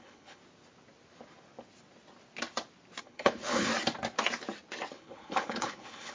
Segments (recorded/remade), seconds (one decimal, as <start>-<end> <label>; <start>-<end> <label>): 0.0-0.4 remade; 0.4-3.0 recorded; 3.0-3.7 remade; 3.7-4.9 recorded; 4.9-6.1 remade